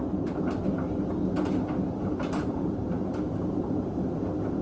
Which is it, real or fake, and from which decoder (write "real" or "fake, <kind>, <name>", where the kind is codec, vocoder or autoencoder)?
real